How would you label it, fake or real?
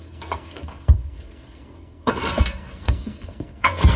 fake